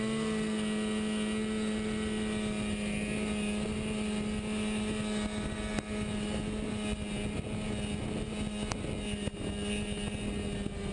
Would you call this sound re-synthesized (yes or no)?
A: no